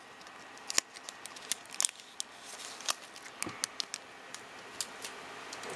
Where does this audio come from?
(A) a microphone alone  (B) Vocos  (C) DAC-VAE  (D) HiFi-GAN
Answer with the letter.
A